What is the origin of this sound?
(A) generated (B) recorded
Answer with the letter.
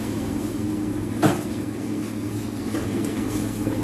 A